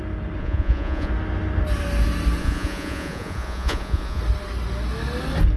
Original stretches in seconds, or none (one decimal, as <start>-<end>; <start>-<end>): 0.0-0.4; 1.1-2.4; 4.2-5.6